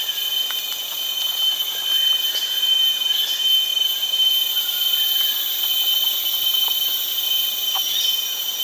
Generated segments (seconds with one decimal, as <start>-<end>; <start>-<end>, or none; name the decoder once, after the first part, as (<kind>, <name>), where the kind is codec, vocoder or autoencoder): 0.0-2.4 (vocoder, BigVGAN v2); 3.7-8.1